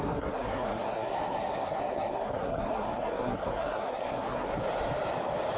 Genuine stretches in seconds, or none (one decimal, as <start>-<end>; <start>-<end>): 4.5-5.6